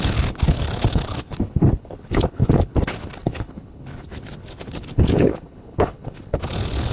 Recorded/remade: remade